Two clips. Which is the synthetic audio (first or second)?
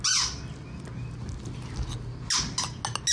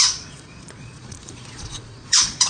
second